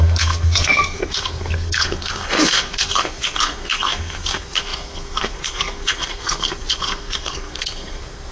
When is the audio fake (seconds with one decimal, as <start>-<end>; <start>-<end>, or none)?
0.0-8.3